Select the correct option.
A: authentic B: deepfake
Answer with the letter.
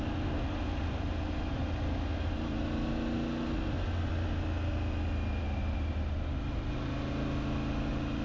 A